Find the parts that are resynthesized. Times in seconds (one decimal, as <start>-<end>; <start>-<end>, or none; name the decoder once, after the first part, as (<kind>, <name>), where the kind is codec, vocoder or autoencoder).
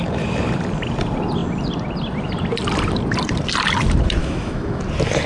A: 4.2-4.8 (autoencoder, DAC-VAE)